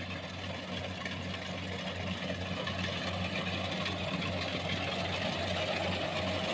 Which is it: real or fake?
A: real